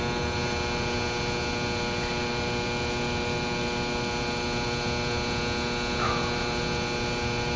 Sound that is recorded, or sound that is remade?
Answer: recorded